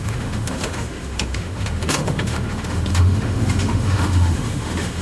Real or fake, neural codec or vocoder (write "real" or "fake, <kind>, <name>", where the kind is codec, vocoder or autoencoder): fake, autoencoder, DAC-VAE